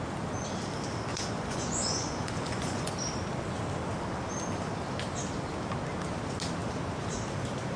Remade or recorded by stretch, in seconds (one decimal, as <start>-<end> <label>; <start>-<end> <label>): 0.0-1.1 recorded; 1.1-2.9 remade; 2.9-7.8 recorded

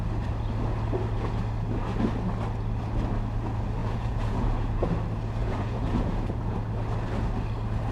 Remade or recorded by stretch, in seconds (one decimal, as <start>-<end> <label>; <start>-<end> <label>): 0.0-3.8 recorded; 3.8-4.9 remade; 4.9-5.4 recorded; 5.4-6.6 remade; 6.6-7.9 recorded

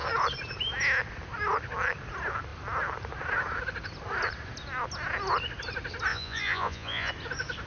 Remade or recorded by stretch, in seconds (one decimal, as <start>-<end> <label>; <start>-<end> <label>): 0.0-6.1 recorded; 6.1-7.1 remade; 7.1-7.7 recorded

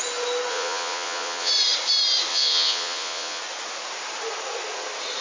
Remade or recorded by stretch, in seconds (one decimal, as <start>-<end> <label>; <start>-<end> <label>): 0.0-0.5 recorded; 0.5-1.5 remade; 1.5-2.3 recorded; 2.3-3.4 remade; 3.4-5.2 recorded

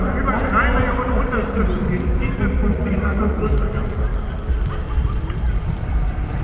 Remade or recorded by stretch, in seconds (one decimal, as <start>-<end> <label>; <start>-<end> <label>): 0.0-2.7 recorded; 2.7-3.4 remade; 3.4-6.4 recorded

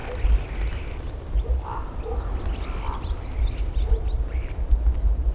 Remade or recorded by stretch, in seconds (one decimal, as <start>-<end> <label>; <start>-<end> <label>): 0.0-5.3 recorded